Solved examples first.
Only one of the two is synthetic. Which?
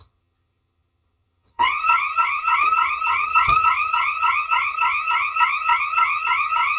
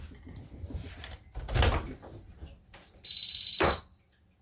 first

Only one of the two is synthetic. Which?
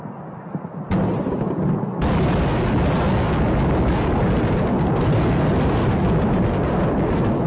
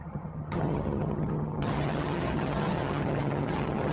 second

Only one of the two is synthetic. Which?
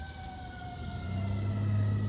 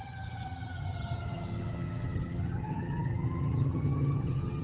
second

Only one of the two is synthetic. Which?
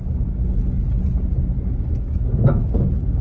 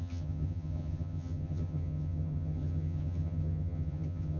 second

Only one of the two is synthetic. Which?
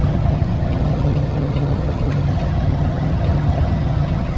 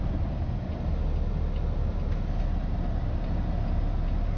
first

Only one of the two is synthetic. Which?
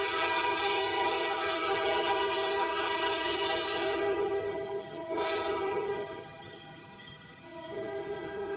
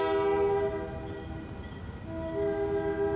first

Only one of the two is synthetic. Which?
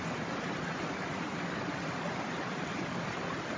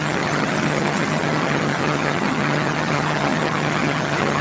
second